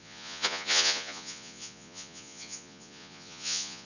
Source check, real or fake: fake